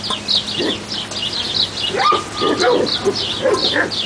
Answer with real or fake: real